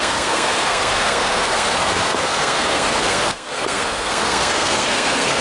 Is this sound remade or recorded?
remade